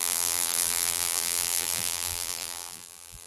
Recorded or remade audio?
remade